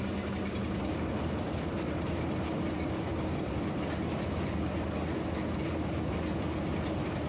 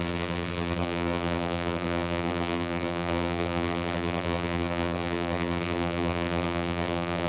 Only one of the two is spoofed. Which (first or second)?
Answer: second